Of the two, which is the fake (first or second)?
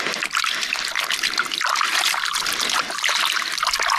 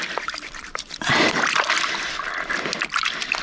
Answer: second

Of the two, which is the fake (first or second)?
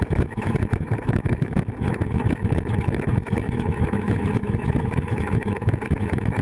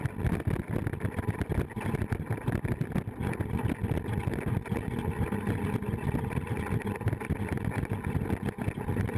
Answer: first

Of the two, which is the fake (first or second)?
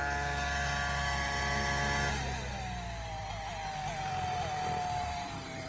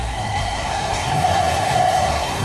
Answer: second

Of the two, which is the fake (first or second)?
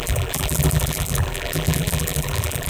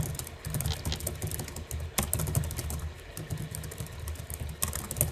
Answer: first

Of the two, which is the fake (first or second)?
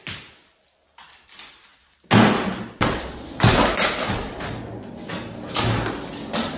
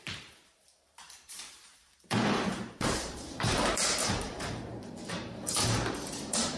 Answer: second